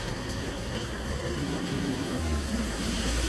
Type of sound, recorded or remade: remade